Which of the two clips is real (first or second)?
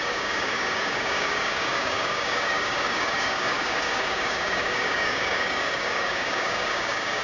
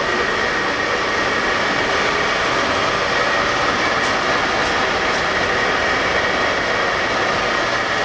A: second